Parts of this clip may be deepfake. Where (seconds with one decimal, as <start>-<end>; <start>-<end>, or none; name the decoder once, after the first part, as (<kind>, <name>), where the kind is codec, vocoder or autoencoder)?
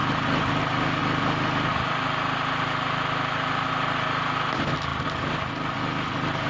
none